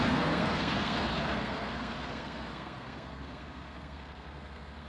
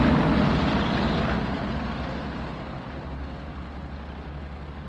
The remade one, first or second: first